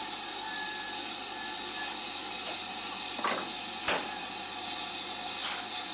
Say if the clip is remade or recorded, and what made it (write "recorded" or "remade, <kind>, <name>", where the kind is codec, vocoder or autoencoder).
recorded